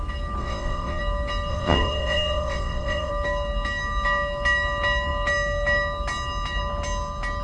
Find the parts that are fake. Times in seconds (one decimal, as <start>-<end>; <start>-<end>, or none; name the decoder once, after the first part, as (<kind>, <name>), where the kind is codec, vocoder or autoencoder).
0.4-1.0 (vocoder, WaveNeXt); 1.5-3.1